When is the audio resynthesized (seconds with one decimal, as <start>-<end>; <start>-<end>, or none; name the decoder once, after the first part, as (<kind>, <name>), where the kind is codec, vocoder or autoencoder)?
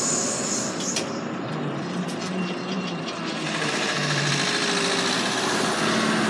2.7-4.3 (vocoder, BigVGAN v2)